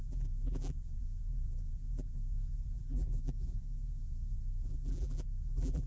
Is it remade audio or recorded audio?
remade